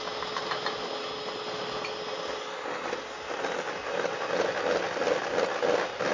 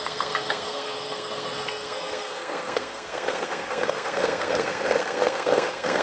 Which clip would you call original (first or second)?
first